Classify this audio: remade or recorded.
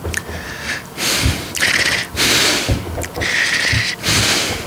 recorded